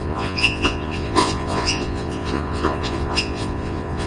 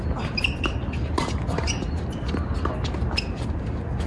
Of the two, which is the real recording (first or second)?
second